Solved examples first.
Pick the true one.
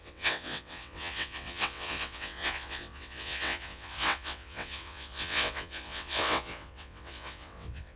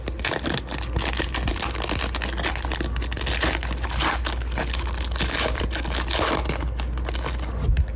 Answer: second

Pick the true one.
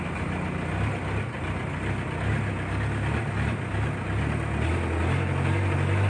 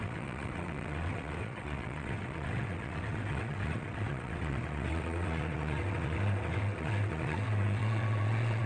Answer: first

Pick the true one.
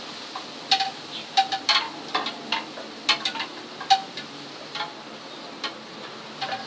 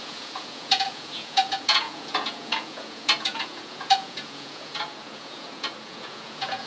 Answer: first